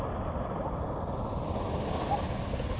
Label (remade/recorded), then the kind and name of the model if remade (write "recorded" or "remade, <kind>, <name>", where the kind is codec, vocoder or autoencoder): recorded